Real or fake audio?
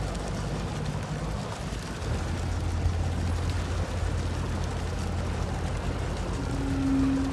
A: real